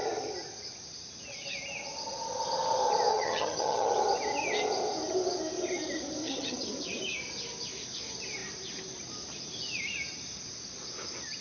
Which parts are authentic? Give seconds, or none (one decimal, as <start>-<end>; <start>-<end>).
0.0-3.1; 3.9-6.2; 6.7-11.4

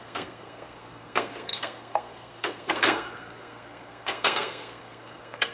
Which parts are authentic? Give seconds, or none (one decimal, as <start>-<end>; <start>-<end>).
none

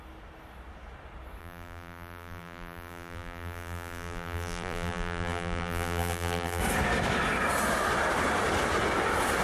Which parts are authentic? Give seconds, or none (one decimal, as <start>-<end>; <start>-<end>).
0.0-1.4; 6.6-9.4

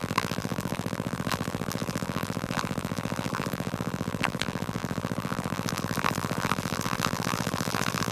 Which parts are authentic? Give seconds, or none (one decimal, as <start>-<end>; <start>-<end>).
none